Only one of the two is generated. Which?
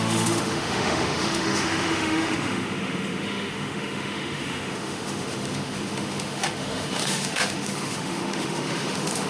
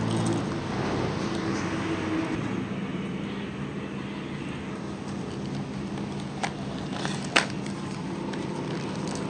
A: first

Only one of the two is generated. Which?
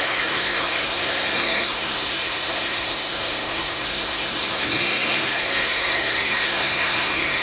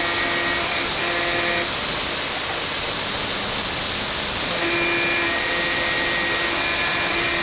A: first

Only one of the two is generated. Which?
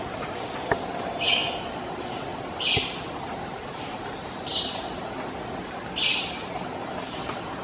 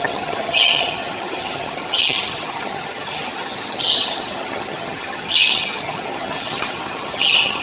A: second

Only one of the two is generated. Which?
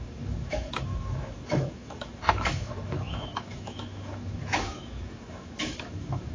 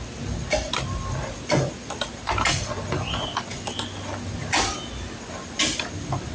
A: first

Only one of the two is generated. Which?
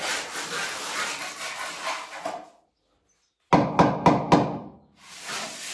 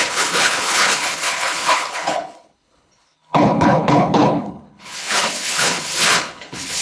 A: second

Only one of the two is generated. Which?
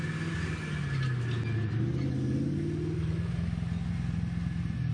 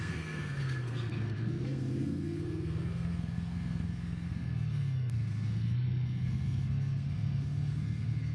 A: second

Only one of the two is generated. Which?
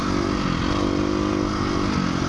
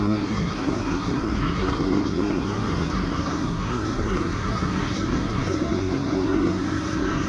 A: second